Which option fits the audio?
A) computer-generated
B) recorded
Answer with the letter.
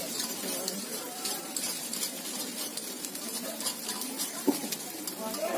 A